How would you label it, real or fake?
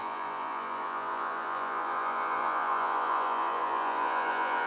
fake